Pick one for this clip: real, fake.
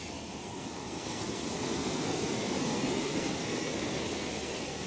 fake